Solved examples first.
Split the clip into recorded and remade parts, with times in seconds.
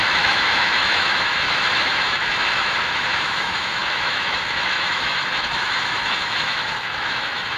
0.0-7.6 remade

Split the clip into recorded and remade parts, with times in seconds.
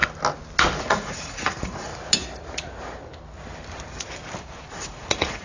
0.0-0.8 recorded; 0.8-1.9 remade; 1.9-4.7 recorded; 4.7-5.4 remade